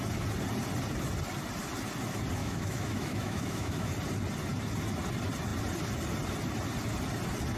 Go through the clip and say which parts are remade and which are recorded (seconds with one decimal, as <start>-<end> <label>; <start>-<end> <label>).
0.0-2.4 recorded; 2.4-3.9 remade; 3.9-7.6 recorded